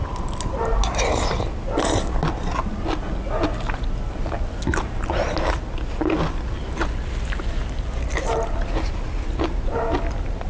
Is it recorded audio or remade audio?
recorded